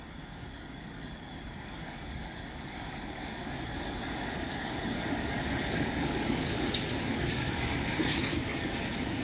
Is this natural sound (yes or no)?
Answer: no